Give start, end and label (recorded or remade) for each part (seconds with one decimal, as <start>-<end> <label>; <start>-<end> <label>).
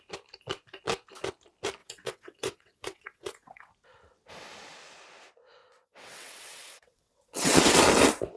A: 0.0-1.8 recorded; 1.8-3.7 remade; 3.7-5.6 recorded; 5.6-7.8 remade; 7.8-8.4 recorded